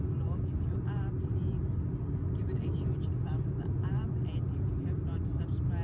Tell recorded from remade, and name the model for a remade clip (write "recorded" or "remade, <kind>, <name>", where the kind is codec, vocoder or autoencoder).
recorded